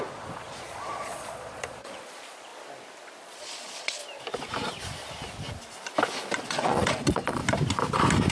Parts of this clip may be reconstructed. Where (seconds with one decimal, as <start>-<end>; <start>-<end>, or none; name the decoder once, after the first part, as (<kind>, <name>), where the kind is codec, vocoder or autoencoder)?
0.0-2.5 (vocoder, Vocos); 3.2-4.0; 6.4-7.4